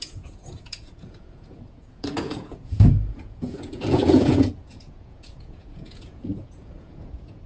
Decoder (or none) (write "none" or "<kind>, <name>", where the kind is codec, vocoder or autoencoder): vocoder, Vocos